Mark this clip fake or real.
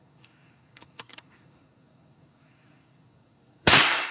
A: fake